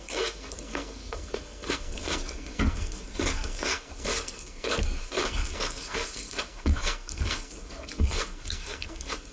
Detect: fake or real fake